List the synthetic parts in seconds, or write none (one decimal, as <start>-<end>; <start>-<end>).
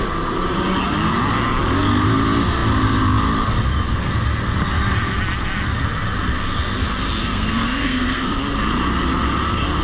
7.2-8.4